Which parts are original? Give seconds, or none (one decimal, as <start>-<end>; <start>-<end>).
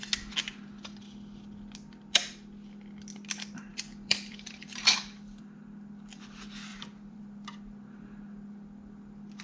0.0-3.7; 5.4-6.7; 7.2-9.4